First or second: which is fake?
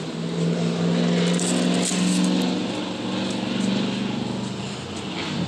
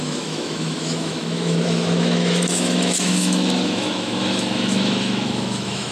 second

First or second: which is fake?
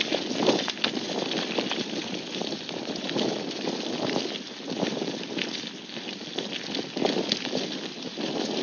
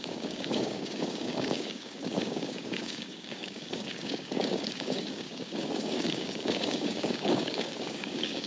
second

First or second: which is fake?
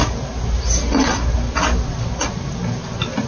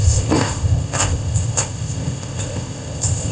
second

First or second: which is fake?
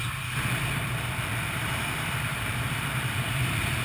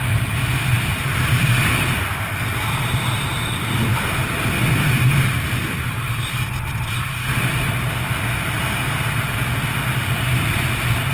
first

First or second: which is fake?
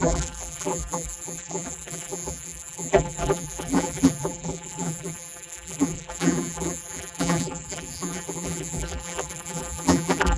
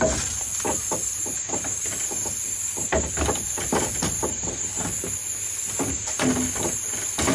first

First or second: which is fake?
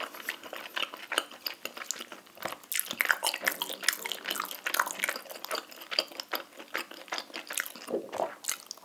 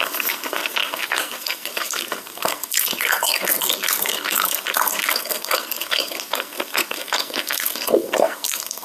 second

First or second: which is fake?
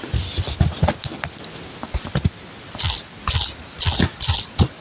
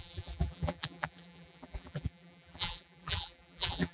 second